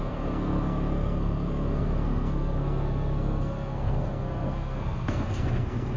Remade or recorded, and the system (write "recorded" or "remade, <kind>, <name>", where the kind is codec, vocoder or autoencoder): remade, codec, SNAC